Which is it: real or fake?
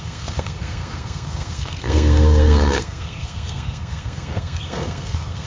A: fake